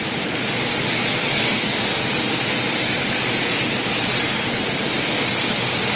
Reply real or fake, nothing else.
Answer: real